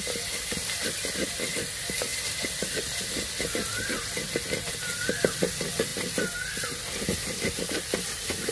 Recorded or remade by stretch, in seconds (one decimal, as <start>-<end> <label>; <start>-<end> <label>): 0.0-8.5 recorded

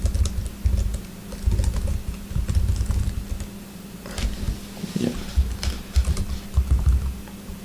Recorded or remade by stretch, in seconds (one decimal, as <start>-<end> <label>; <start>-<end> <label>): 0.0-7.6 recorded

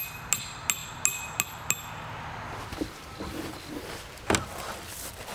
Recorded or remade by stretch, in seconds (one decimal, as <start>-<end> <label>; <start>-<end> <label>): 0.0-5.3 recorded

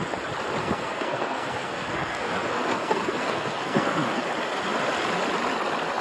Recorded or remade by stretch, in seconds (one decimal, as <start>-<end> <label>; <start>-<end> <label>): 0.0-0.6 recorded; 0.6-4.2 remade; 4.2-6.0 recorded